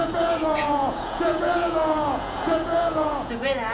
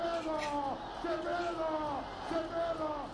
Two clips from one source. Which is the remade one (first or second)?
first